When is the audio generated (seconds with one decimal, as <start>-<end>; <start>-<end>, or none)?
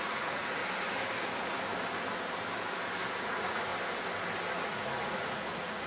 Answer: 0.0-0.6; 3.2-3.7; 4.5-5.9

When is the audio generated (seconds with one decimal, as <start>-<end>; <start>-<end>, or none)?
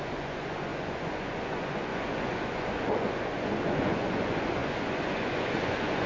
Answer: 0.0-6.1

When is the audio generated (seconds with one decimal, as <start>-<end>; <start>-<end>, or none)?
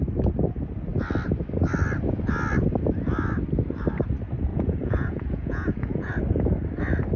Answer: 4.5-6.1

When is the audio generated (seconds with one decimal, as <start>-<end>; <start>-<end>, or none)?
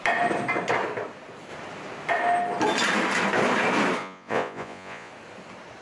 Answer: 4.0-5.1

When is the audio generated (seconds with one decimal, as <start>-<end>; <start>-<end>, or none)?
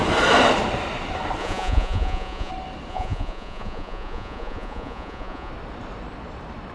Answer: 1.4-2.5; 2.9-5.5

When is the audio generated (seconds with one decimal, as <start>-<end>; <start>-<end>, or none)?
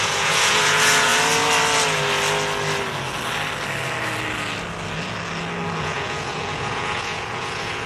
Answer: 0.0-1.1; 5.8-7.9